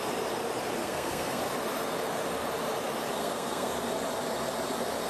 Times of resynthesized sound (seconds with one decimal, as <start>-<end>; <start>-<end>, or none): 0.8-1.4; 3.2-3.7